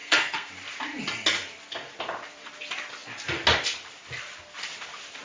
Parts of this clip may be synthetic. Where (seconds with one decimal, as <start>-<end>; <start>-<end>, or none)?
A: 0.0-0.5